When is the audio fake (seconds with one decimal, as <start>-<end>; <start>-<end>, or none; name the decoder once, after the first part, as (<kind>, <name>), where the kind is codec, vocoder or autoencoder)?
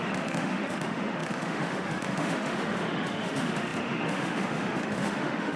0.0-5.6 (autoencoder, DAC-VAE)